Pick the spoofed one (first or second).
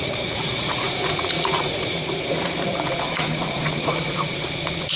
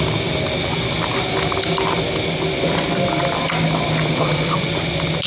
first